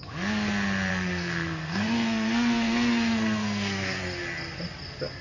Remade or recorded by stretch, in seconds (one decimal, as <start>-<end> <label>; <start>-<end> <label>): 0.0-0.9 recorded; 0.9-4.0 remade; 4.0-5.2 recorded